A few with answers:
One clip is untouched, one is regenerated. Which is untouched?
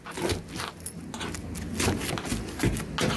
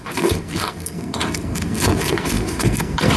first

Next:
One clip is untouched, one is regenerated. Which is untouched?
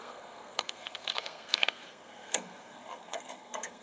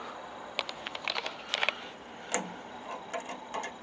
second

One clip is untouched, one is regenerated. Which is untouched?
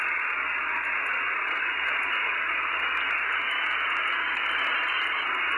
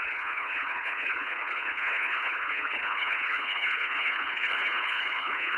first